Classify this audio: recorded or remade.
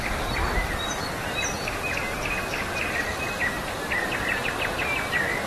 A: recorded